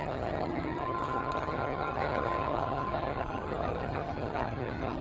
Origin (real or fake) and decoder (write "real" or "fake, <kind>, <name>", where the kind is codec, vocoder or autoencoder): fake, vocoder, HiFi-GAN